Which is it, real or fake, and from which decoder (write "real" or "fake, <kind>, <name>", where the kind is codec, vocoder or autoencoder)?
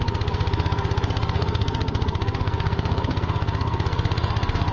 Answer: fake, codec, SNAC